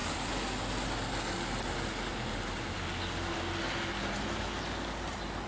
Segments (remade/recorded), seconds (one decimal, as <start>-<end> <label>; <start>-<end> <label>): 0.0-5.5 recorded